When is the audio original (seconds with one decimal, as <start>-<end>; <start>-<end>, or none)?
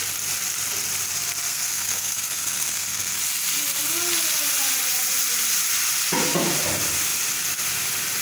0.0-1.5; 3.2-8.2